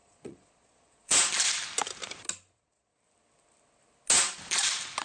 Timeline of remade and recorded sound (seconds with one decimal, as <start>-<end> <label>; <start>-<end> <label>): 0.0-1.1 remade; 1.1-2.5 recorded; 2.5-2.9 remade; 2.9-5.0 recorded